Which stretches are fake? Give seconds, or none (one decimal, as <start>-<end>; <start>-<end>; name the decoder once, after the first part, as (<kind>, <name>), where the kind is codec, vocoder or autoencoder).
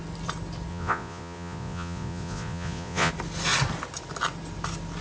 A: 0.7-3.1 (vocoder, Vocos)